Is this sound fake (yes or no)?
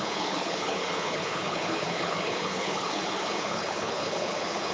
yes